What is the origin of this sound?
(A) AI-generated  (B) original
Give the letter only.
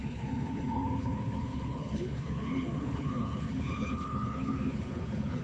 A